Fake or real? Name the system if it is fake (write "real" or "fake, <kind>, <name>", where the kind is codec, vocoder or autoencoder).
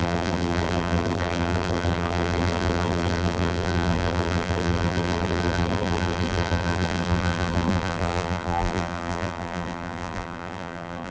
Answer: fake, vocoder, BigVGAN v2